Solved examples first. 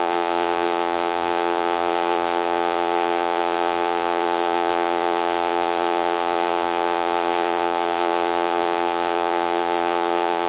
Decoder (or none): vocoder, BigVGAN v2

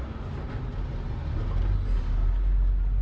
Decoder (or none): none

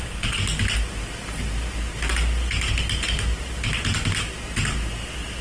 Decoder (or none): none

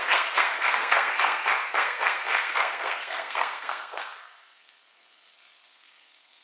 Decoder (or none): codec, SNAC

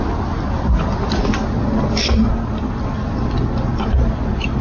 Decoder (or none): none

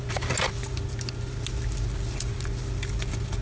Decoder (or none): none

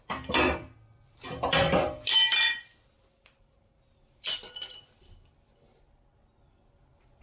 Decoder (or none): none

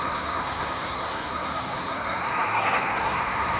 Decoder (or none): codec, SNAC